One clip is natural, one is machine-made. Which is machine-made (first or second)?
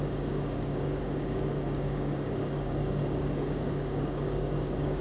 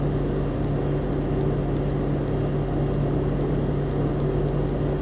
first